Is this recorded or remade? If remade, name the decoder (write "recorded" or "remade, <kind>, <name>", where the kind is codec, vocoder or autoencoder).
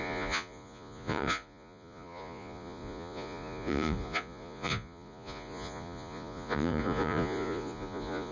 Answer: remade, vocoder, Vocos